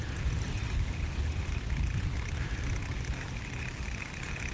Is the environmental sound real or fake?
fake